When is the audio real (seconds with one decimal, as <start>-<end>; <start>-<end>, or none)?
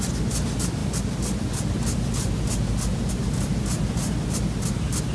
0.0-5.1